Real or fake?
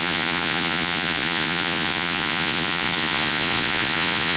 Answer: fake